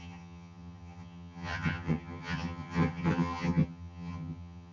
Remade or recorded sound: remade